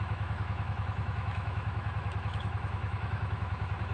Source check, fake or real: fake